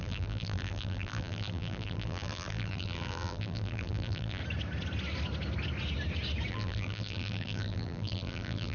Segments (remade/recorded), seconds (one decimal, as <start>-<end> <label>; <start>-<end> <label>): 0.0-4.4 remade; 4.4-6.5 recorded; 6.5-8.7 remade